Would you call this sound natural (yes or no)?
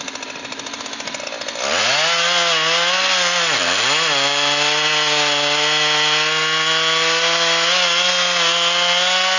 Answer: yes